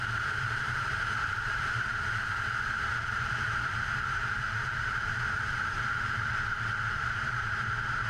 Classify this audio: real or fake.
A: fake